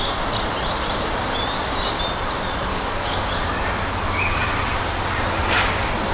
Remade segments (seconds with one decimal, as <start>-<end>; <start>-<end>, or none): 2.7-3.3